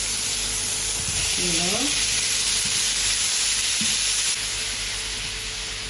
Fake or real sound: real